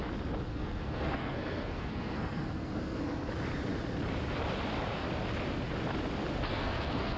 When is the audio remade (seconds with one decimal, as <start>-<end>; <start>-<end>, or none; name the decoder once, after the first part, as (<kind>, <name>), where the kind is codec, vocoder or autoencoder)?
0.5-3.3 (codec, SNAC); 6.5-7.2